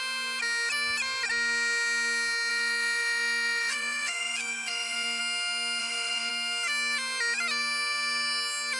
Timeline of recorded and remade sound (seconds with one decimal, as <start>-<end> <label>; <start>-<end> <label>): 0.0-2.5 recorded; 2.5-5.2 remade; 5.2-5.8 recorded; 5.8-6.3 remade; 6.3-8.8 recorded